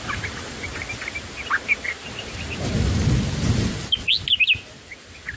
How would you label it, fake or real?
real